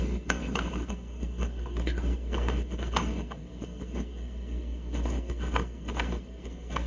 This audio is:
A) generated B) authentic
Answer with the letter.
A